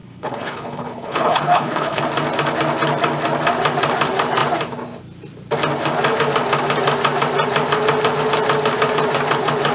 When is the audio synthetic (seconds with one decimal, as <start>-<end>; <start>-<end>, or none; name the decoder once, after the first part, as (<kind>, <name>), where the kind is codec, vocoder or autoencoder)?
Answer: 0.0-2.0 (codec, HILCodec)